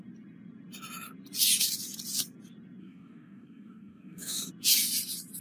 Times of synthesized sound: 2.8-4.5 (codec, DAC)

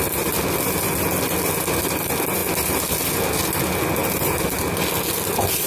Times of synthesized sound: none

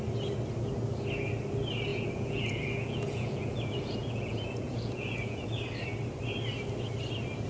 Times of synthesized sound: 1.9-5.5 (vocoder, Vocos)